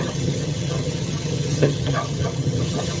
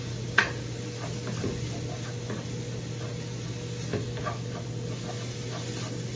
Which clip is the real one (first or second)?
second